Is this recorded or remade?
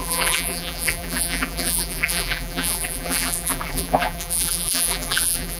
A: remade